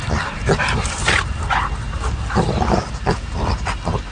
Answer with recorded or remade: recorded